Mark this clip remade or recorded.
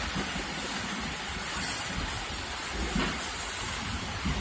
recorded